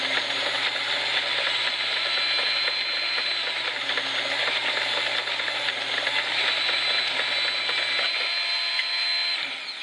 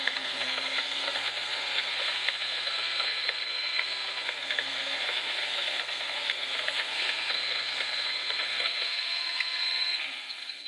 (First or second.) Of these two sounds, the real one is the first